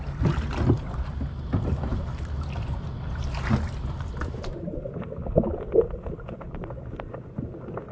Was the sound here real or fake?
real